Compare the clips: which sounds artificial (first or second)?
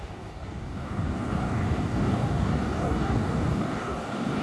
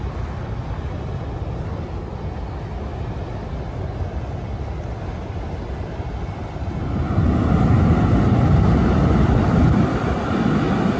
first